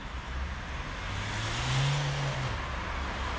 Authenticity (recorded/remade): recorded